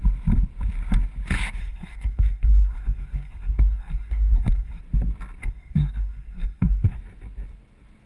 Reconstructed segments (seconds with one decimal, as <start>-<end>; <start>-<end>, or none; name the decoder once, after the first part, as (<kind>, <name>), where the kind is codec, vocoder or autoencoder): 1.6-4.8 (codec, SNAC); 5.4-7.0